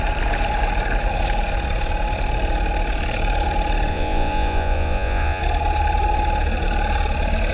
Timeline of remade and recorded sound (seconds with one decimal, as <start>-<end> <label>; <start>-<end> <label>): 0.0-3.9 recorded; 3.9-5.4 remade; 5.4-7.5 recorded